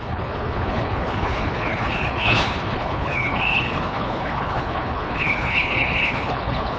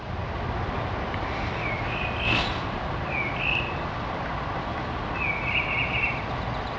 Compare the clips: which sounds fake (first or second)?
first